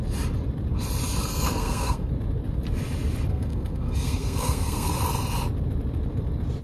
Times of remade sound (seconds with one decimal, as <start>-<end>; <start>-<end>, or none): 1.3-2.1; 3.3-4.9